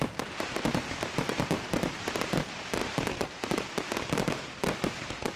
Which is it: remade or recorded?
remade